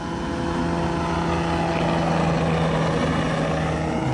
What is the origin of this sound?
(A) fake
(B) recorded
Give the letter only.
B